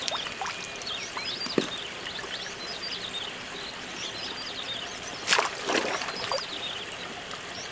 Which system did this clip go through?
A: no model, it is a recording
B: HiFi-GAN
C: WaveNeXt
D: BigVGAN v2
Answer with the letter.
A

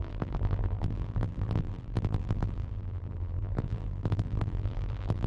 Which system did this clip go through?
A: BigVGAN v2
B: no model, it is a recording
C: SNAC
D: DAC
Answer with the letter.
A